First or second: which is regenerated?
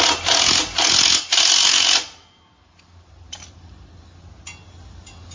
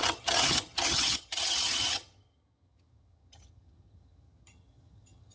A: second